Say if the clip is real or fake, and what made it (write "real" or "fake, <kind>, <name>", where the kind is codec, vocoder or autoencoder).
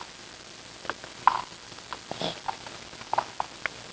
real